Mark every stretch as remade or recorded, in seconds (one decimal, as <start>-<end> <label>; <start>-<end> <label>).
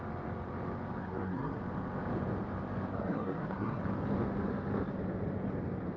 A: 0.0-1.0 recorded; 1.0-1.6 remade; 1.6-2.9 recorded; 2.9-3.8 remade; 3.8-6.0 recorded